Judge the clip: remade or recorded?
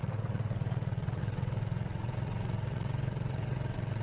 remade